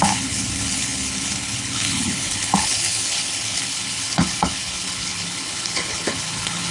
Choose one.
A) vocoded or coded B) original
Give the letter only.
A